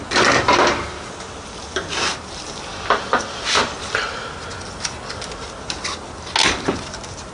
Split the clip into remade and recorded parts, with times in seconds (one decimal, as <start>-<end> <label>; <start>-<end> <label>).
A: 0.0-2.7 remade; 2.7-6.8 recorded; 6.8-7.3 remade